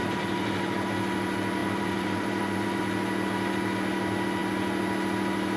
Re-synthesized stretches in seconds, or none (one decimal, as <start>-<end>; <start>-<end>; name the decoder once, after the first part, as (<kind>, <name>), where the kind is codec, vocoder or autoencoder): 0.0-0.9 (vocoder, BigVGAN v2); 1.6-2.8